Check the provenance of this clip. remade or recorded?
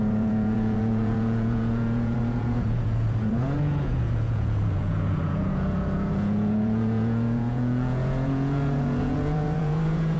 remade